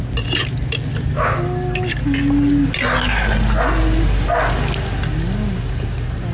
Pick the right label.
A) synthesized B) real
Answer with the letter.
B